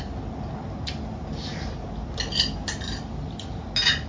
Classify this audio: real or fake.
real